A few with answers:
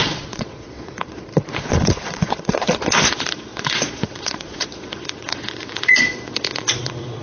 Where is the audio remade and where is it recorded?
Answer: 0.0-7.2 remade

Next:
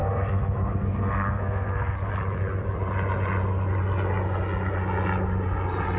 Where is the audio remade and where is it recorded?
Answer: 0.0-2.1 remade; 2.1-6.0 recorded

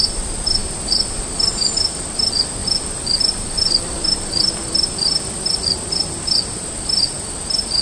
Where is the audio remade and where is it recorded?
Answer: 0.0-0.6 recorded; 0.6-1.4 remade; 1.4-2.6 recorded; 2.6-6.7 remade; 6.7-7.8 recorded

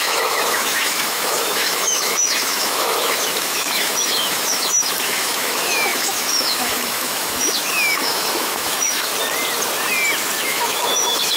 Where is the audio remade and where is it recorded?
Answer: 0.0-9.1 remade; 9.1-10.4 recorded; 10.4-11.4 remade